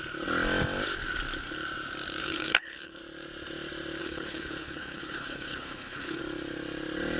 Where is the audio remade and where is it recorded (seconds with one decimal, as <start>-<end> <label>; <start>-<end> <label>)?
0.0-2.2 recorded; 2.2-3.0 remade; 3.0-4.0 recorded; 4.0-6.2 remade; 6.2-7.2 recorded